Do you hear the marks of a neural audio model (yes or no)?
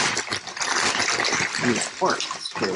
yes